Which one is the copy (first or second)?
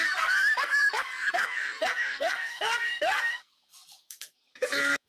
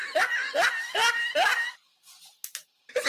first